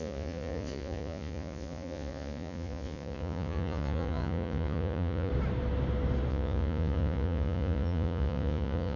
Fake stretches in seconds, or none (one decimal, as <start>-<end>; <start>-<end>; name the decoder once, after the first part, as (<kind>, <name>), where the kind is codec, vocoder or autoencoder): 0.0-5.3 (vocoder, Vocos); 6.3-9.0

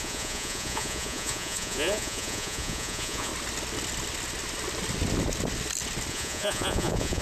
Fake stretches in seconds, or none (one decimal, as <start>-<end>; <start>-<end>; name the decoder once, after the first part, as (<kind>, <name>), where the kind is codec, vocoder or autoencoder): 0.0-3.3 (vocoder, Vocos); 6.1-7.2

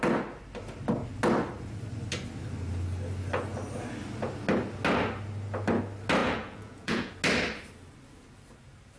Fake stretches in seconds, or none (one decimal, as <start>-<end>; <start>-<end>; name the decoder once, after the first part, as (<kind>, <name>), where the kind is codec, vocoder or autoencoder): 6.2-7.1 (vocoder, Vocos)

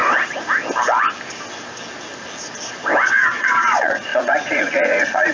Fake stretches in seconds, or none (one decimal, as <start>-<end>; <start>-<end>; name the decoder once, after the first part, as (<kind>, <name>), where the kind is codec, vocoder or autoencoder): 3.2-5.3 (vocoder, Vocos)

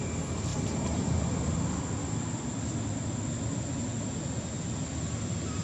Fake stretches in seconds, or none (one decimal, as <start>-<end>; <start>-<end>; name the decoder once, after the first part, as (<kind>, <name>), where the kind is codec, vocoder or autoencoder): none